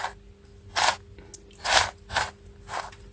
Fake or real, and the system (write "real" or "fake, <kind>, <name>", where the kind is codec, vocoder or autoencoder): real